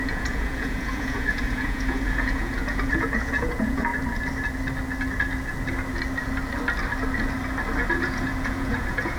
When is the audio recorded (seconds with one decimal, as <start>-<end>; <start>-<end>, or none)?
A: 3.9-8.0